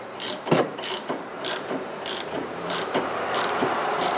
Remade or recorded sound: remade